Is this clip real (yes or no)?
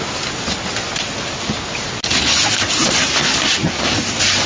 yes